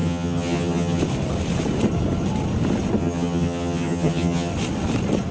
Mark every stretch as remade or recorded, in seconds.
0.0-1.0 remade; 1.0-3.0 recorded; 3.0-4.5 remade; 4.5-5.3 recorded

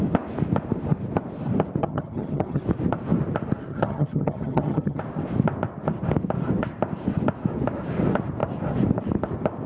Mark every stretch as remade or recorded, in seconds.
0.0-1.8 recorded; 1.8-2.6 remade; 2.6-3.7 recorded; 3.7-5.0 remade; 5.0-9.7 recorded

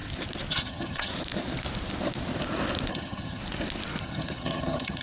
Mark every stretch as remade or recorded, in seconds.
0.0-0.5 recorded; 0.5-1.1 remade; 1.1-2.9 recorded; 2.9-3.4 remade; 3.4-4.0 recorded; 4.0-5.0 remade

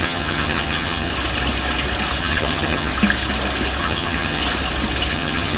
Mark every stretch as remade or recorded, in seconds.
0.0-1.1 remade; 1.1-2.2 recorded; 2.2-2.9 remade; 2.9-3.8 recorded; 3.8-4.4 remade; 4.4-5.1 recorded; 5.1-5.6 remade

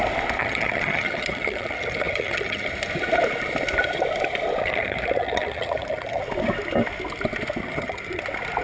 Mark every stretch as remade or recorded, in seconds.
0.0-0.4 recorded; 0.4-2.7 remade; 2.7-4.6 recorded; 4.6-6.2 remade; 6.2-7.6 recorded; 7.6-8.2 remade; 8.2-8.6 recorded

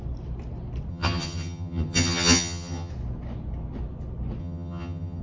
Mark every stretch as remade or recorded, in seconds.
0.0-0.9 recorded; 0.9-2.9 remade; 2.9-4.4 recorded; 4.4-5.2 remade

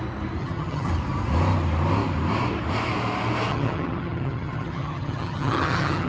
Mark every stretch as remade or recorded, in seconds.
0.0-0.4 recorded; 0.4-0.9 remade; 0.9-3.5 recorded; 3.5-6.1 remade